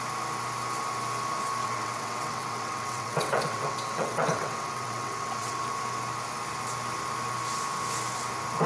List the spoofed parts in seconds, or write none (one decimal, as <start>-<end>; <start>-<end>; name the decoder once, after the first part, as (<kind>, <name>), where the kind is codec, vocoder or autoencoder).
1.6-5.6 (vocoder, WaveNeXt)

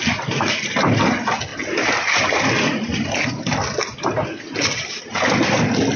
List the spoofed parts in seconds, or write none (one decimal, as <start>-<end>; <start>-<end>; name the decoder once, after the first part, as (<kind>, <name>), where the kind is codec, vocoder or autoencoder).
none

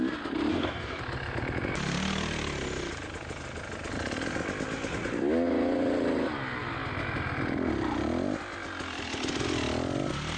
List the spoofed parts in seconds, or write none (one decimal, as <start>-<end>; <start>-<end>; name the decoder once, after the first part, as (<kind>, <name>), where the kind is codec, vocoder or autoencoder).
0.5-1.0 (codec, DAC)

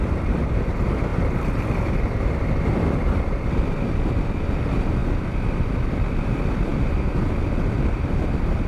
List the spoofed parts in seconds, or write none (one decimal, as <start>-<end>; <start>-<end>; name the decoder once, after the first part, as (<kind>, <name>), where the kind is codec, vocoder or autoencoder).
none

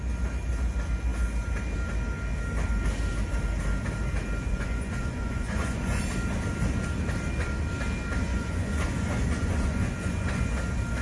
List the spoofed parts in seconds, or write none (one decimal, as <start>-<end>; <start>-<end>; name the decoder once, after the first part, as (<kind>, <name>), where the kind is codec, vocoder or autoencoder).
4.5-6.0 (vocoder, Vocos); 8.3-10.5

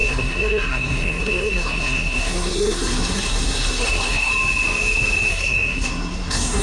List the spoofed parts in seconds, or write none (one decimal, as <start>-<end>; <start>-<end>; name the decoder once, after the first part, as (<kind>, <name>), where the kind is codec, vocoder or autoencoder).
0.0-4.3 (codec, SNAC); 5.3-6.6

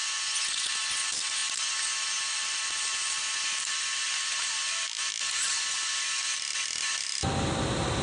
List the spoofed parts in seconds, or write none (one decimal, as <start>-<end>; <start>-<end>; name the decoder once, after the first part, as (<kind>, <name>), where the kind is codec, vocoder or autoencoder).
0.0-0.7 (vocoder, Vocos)